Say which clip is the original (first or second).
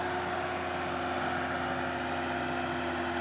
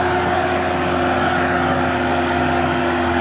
first